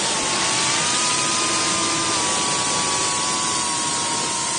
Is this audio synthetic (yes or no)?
no